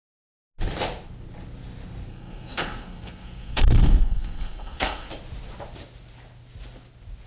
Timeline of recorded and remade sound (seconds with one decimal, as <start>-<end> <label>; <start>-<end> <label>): 0.0-2.1 recorded; 2.1-5.1 remade; 5.1-7.3 recorded